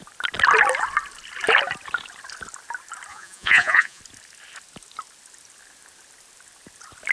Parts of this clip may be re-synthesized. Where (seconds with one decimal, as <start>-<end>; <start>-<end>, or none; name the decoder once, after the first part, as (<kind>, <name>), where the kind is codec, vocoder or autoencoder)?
3.1-4.0 (vocoder, Vocos)